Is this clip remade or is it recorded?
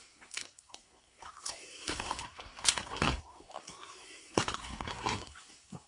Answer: remade